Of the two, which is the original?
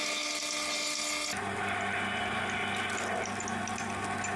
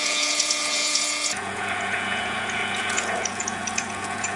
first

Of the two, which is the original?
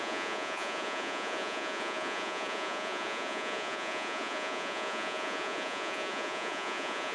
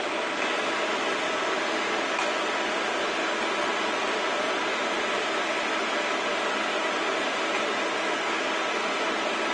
second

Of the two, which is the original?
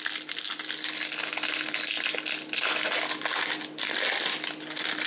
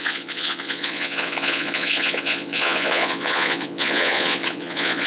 first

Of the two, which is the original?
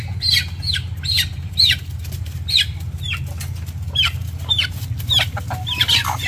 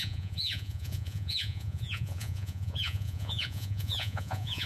first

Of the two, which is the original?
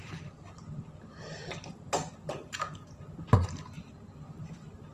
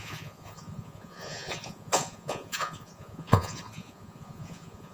first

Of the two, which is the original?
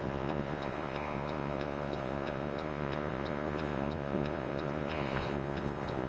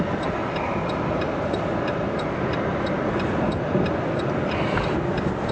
second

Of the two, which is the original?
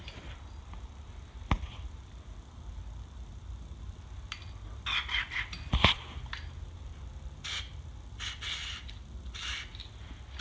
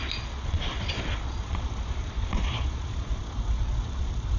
first